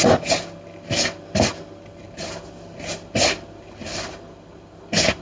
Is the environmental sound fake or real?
real